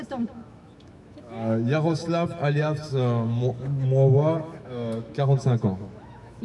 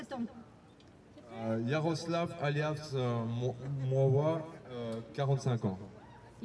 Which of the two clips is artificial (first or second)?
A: first